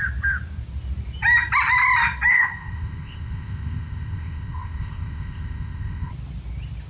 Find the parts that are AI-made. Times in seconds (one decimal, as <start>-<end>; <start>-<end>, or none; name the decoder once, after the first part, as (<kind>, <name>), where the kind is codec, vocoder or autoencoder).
2.3-6.1 (codec, ZipCodec)